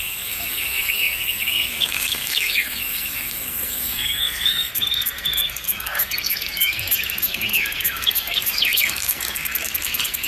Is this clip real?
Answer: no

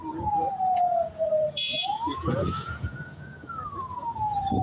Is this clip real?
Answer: no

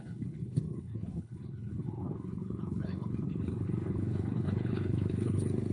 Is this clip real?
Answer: no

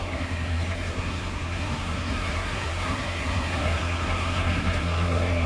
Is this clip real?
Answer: no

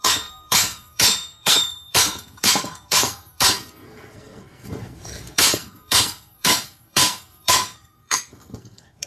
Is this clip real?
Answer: no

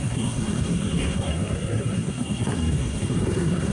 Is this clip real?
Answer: no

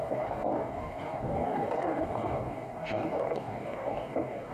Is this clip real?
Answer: no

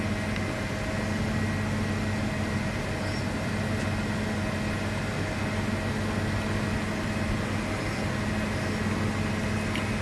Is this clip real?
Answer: yes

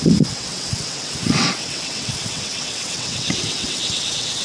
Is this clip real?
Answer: no